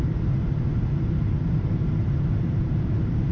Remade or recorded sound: remade